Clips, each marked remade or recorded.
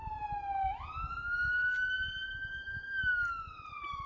recorded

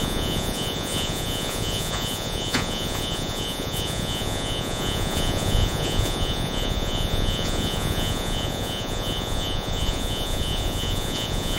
remade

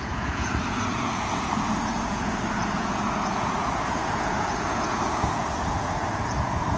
remade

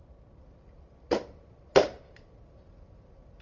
recorded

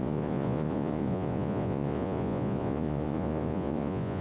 remade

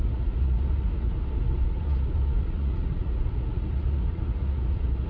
remade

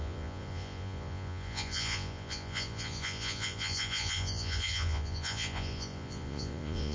remade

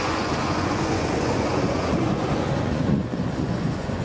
remade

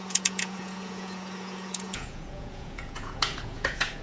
remade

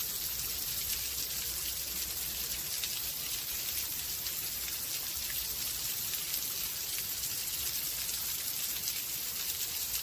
recorded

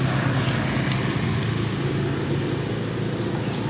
recorded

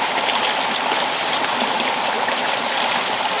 recorded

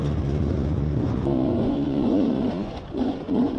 remade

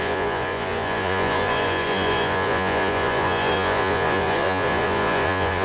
remade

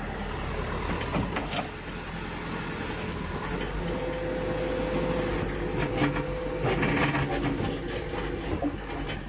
recorded